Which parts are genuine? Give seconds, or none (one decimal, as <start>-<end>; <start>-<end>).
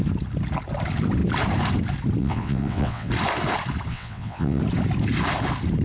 0.0-2.2; 3.1-3.9; 4.6-5.8